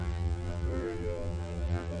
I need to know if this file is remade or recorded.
remade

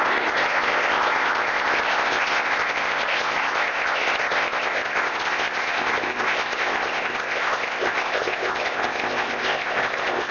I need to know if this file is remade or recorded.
remade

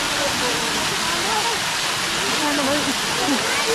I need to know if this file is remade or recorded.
recorded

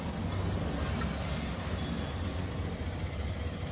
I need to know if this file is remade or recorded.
recorded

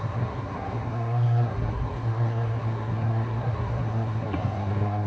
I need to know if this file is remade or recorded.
remade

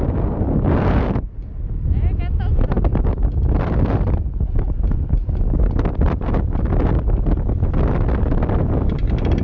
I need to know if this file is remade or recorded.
recorded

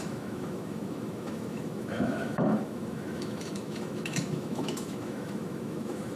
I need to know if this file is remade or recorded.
remade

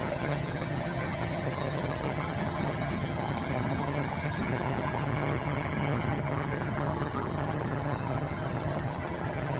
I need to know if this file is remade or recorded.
remade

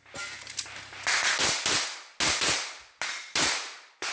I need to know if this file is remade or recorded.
recorded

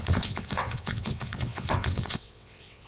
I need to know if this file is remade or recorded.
remade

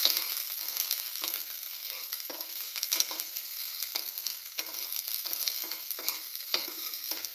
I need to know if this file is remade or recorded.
remade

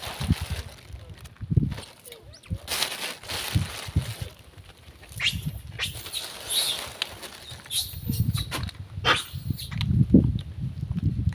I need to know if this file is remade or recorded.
recorded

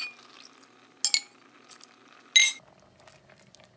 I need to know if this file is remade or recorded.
recorded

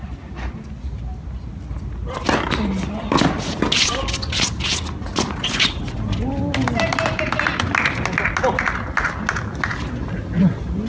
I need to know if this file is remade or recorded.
recorded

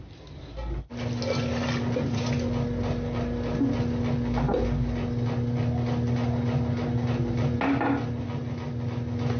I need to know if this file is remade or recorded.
recorded